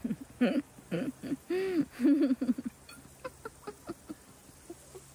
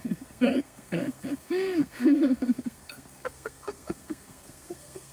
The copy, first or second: second